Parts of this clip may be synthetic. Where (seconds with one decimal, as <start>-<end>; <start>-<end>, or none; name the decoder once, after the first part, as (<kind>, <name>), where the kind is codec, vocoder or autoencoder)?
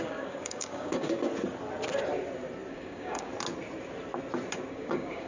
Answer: 0.0-1.3 (codec, DAC); 2.7-3.3; 4.7-5.3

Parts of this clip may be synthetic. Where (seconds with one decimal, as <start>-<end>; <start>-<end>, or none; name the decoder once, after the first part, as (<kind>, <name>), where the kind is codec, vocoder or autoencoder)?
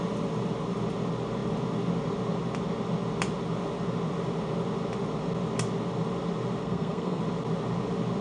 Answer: 6.6-7.2 (codec, SNAC)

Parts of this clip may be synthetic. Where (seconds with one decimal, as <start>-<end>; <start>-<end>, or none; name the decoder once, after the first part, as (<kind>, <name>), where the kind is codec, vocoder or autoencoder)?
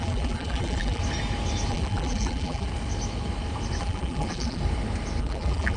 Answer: 0.0-1.0 (vocoder, BigVGAN v2); 1.7-2.7; 3.8-4.6; 5.2-5.8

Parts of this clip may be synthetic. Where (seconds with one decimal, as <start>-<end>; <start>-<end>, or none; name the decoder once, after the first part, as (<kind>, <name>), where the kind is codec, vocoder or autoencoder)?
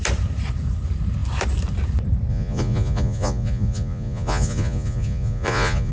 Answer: 2.3-5.9 (vocoder, Vocos)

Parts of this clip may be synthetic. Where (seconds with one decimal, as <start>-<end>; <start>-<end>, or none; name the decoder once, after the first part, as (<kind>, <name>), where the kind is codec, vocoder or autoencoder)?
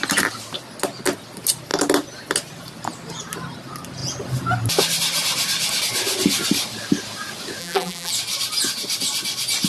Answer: 7.6-8.1 (vocoder, BigVGAN v2)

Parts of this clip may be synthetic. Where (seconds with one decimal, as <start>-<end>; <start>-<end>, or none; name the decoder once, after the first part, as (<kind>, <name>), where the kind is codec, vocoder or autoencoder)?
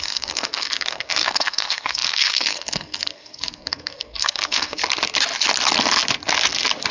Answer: 0.0-4.8 (codec, SNAC)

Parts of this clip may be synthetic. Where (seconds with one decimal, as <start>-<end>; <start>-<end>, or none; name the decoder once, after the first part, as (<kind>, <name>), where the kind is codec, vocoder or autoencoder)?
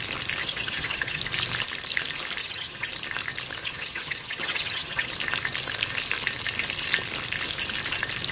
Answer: 0.4-1.2 (vocoder, HiFi-GAN); 2.4-2.9; 3.6-5.1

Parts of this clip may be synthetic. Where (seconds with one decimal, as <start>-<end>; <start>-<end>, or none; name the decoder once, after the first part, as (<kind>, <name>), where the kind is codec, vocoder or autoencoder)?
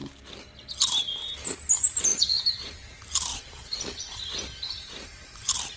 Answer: 2.1-2.7 (vocoder, Vocos); 3.3-4.2